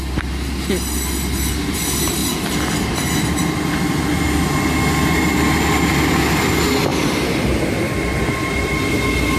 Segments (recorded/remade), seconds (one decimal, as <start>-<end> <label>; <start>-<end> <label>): 0.0-6.9 recorded; 6.9-8.7 remade; 8.7-9.4 recorded